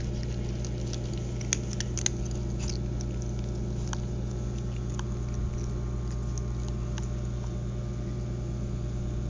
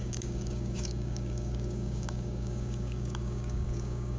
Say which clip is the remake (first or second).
second